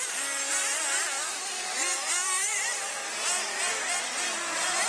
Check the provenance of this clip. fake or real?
real